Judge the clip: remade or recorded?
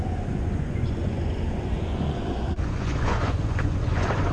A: remade